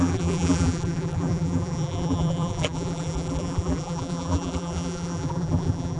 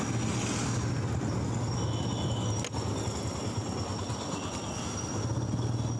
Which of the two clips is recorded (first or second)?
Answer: second